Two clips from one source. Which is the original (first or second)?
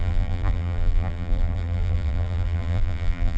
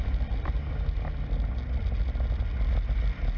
second